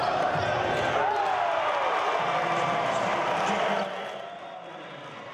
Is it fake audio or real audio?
real